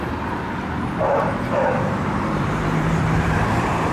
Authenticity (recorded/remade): remade